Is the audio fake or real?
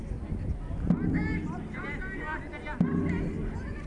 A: real